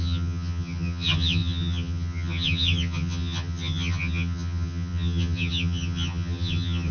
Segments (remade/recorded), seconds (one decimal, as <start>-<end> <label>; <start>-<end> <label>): 0.0-6.9 remade